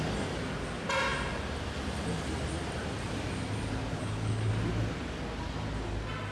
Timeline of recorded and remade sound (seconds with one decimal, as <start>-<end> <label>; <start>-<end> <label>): 0.0-3.9 recorded; 3.9-4.5 remade; 4.5-6.3 recorded